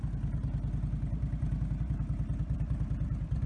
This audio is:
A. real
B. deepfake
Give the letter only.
A